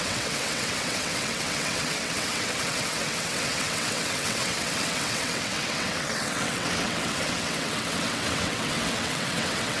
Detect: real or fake fake